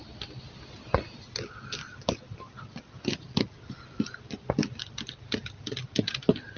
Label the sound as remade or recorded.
recorded